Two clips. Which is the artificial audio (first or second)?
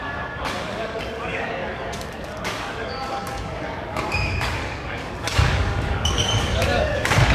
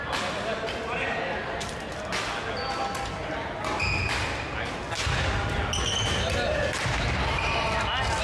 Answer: first